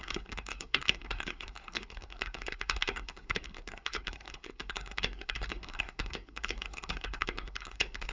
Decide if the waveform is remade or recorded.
remade